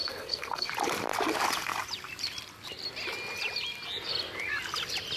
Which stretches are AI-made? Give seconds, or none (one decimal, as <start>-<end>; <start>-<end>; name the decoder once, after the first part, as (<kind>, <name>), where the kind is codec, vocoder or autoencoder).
0.0-0.7 (codec, SNAC)